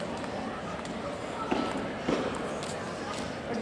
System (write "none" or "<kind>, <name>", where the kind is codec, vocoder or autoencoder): none